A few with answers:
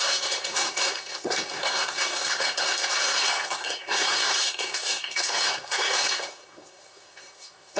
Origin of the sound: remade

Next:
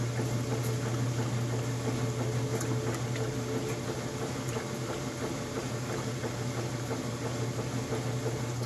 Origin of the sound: recorded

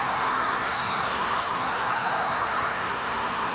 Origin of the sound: remade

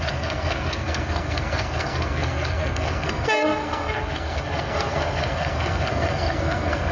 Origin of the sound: remade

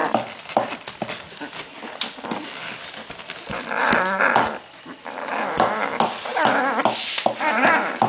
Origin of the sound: recorded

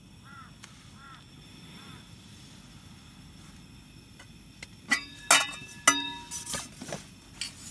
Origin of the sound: recorded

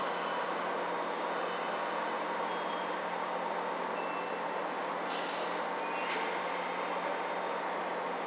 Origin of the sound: recorded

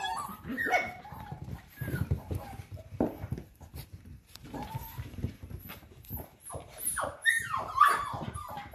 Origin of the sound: remade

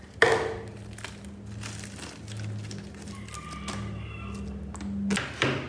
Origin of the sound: recorded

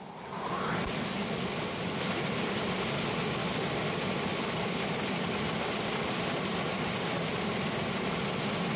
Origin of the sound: recorded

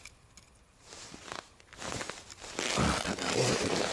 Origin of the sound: recorded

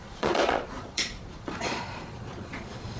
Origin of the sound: remade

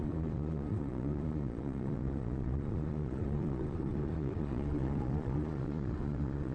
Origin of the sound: remade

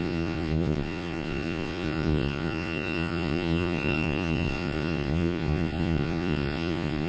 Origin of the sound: remade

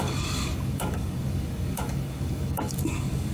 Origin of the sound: remade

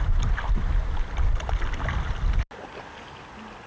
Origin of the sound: recorded